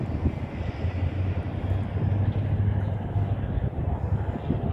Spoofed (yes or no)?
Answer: no